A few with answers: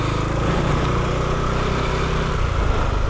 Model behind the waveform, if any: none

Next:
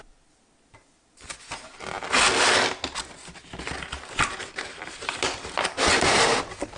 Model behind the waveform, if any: none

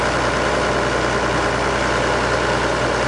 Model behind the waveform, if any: none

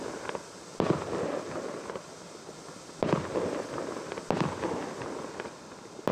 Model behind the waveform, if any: none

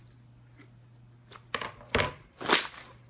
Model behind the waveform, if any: none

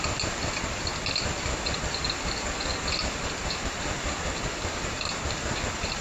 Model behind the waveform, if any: none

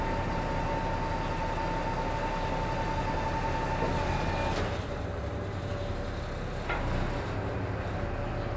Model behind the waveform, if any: none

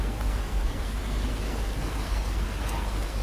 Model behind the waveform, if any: codec, SNAC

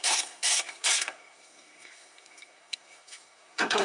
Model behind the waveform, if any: codec, SNAC